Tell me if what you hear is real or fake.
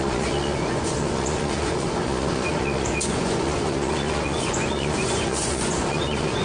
fake